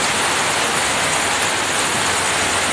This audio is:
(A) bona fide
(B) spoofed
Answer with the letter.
A